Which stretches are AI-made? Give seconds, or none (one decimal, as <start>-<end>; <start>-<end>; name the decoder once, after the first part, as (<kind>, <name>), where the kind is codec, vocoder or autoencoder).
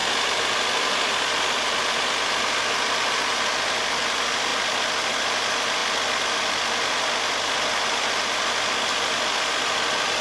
none